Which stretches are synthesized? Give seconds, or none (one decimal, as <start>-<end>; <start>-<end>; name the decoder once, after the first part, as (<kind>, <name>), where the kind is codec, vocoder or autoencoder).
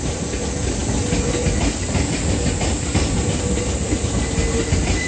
none